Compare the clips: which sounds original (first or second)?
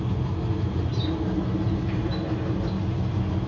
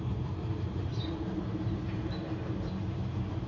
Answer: first